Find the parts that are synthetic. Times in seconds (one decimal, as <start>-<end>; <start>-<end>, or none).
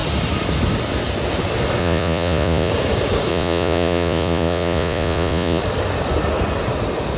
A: 1.8-2.7; 3.3-5.6